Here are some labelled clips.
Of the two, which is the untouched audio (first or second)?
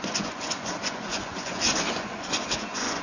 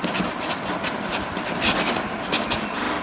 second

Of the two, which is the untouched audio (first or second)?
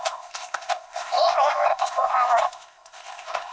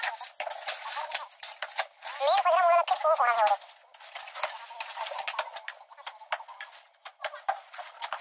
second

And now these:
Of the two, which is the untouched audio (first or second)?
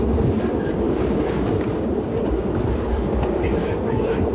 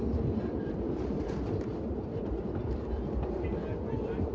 second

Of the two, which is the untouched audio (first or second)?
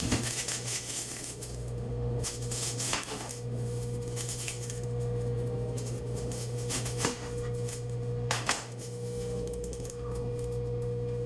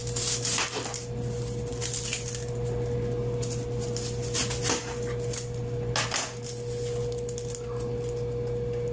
second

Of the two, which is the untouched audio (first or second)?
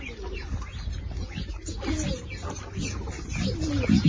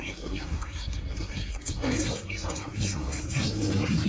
first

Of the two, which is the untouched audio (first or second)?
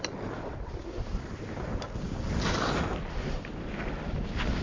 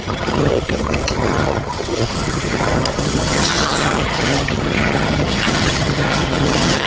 first